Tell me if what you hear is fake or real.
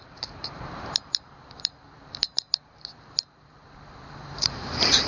fake